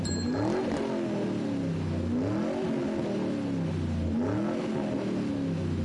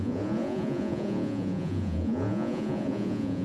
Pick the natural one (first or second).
first